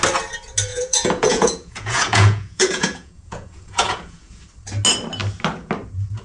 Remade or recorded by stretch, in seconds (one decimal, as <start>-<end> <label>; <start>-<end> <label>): 0.0-0.7 recorded; 0.7-4.4 remade; 4.4-6.2 recorded